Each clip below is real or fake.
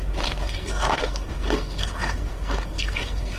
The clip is fake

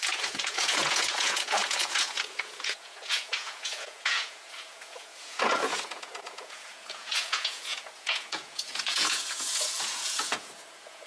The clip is fake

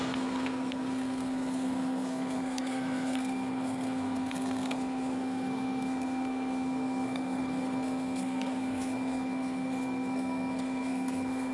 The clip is fake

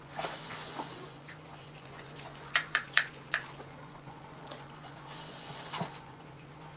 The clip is fake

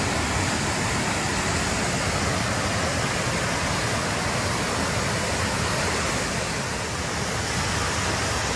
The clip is real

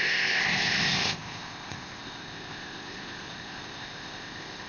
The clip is fake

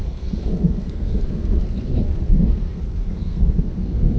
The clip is fake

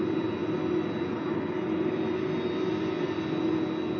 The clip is real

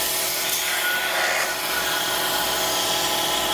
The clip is real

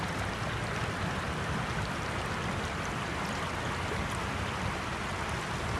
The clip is real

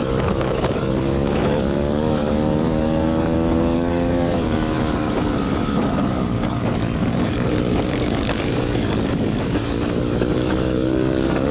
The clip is fake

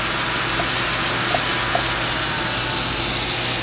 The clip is real